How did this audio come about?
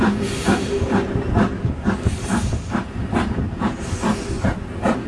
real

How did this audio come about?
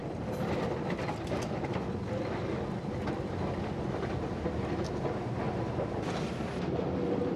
real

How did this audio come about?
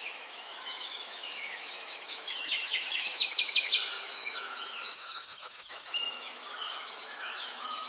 fake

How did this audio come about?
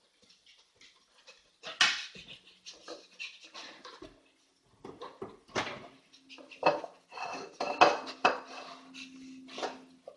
real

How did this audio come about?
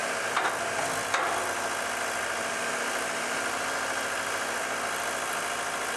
real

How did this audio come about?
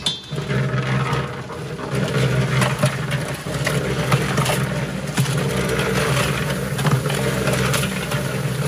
real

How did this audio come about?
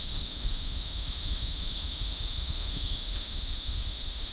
fake